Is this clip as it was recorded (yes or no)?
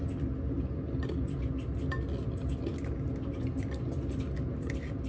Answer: yes